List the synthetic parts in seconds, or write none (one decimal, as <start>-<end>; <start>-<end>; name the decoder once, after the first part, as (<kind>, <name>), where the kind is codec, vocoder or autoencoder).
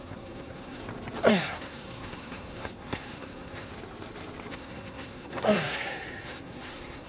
0.0-0.8 (codec, SNAC); 1.3-3.7; 4.5-7.1